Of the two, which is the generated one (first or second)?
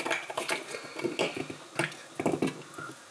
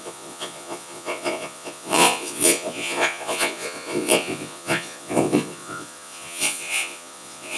second